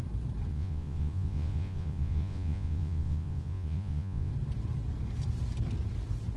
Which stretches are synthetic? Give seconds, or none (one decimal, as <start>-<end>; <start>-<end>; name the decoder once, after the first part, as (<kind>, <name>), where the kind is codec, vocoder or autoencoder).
0.5-4.3 (vocoder, Vocos)